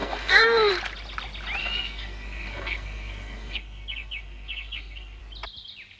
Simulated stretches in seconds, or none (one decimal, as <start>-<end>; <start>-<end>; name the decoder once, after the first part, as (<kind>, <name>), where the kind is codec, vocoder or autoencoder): 0.0-0.7 (codec, SNAC); 1.6-5.2